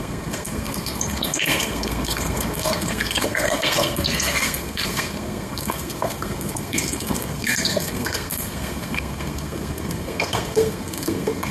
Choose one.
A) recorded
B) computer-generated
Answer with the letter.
B